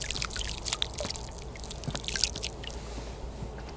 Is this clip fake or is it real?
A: real